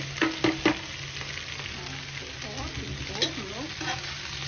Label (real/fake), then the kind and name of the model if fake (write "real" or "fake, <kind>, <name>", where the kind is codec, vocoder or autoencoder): real